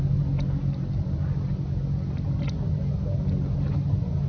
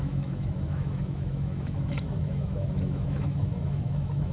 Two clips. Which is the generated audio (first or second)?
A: second